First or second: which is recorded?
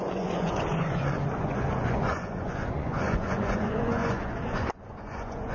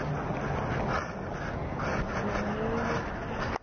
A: second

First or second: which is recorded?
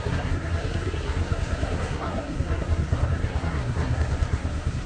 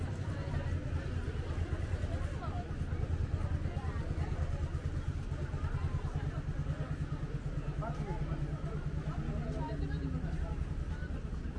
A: second